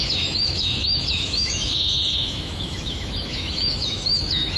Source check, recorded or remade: remade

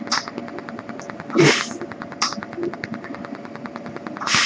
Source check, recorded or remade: recorded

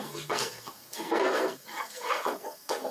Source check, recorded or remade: remade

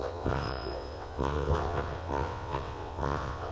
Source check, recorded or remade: remade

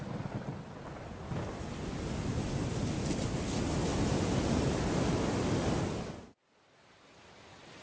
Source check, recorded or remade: recorded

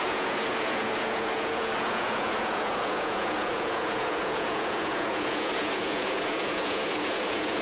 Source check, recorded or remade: remade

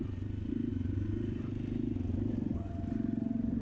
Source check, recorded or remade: recorded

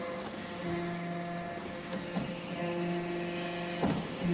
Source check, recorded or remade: recorded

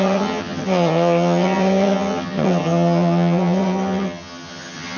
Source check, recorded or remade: remade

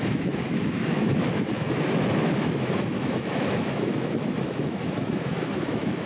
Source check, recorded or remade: remade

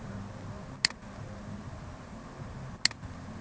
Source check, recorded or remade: recorded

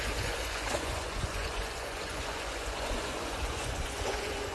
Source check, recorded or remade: remade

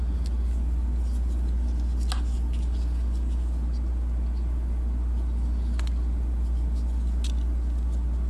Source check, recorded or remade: recorded